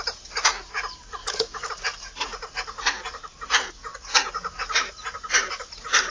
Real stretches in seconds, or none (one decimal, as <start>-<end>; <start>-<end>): 0.0-1.2; 1.7-6.1